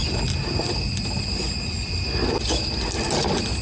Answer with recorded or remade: recorded